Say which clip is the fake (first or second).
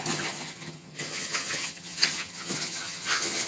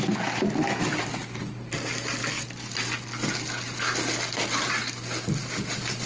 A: first